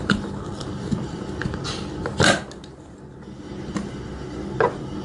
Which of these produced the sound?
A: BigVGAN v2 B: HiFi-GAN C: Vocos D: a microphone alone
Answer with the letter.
D